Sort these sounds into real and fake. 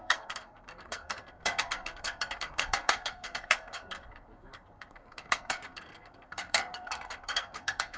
fake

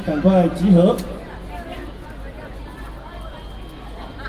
real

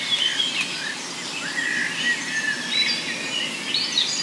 real